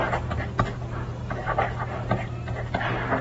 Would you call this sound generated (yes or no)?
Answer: no